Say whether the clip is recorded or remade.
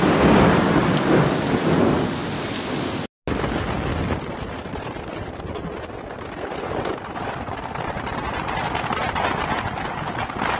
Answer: recorded